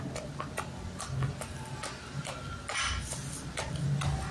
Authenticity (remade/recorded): recorded